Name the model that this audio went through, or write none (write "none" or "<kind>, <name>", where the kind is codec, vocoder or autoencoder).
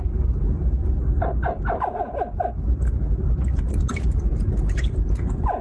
none